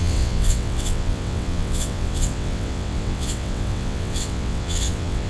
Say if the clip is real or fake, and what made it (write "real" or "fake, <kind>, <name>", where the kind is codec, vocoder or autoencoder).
fake, vocoder, WaveNeXt